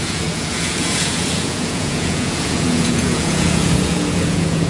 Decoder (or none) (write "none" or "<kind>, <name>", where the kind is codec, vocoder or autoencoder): vocoder, Vocos